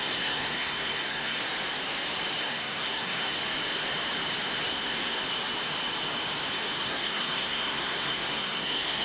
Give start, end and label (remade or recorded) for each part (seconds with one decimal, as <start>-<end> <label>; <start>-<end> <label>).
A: 0.0-1.4 remade; 1.4-2.4 recorded; 2.4-3.4 remade; 3.4-4.7 recorded; 4.7-5.2 remade; 5.2-6.8 recorded; 6.8-9.0 remade